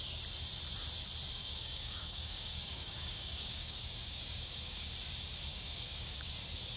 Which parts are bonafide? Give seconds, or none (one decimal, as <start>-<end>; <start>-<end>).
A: 0.0-1.4; 4.9-5.5; 6.3-6.8